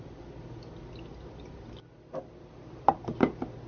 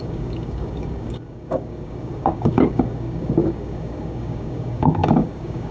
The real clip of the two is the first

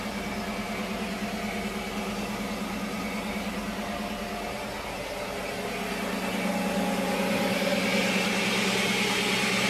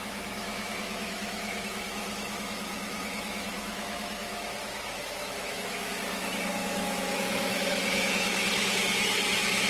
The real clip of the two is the first